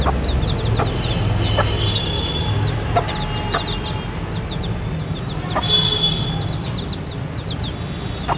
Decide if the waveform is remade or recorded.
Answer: recorded